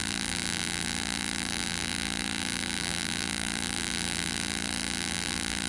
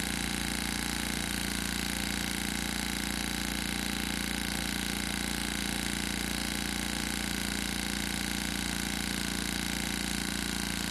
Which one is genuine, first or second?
second